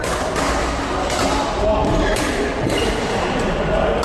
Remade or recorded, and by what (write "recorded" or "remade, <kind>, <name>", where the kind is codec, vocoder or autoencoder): recorded